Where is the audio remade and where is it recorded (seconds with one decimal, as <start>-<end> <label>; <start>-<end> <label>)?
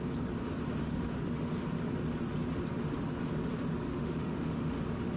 0.0-0.8 recorded; 0.8-1.5 remade; 1.5-3.9 recorded; 3.9-4.8 remade; 4.8-5.2 recorded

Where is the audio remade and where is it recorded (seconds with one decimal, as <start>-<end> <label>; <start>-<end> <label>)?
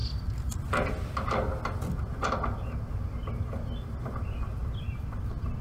0.0-5.6 recorded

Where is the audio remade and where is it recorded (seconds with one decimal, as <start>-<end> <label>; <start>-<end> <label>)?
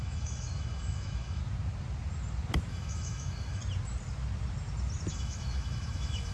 0.0-1.4 remade; 1.4-2.7 recorded; 2.7-3.6 remade; 3.6-5.1 recorded; 5.1-6.3 remade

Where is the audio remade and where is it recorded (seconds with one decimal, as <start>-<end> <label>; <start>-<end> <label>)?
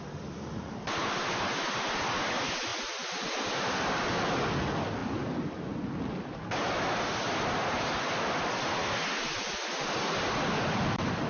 0.0-11.3 recorded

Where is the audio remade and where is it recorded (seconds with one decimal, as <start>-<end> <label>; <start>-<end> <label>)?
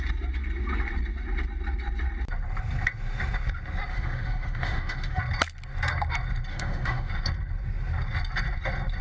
0.0-3.9 recorded; 3.9-5.2 remade; 5.2-6.5 recorded; 6.5-7.1 remade; 7.1-9.0 recorded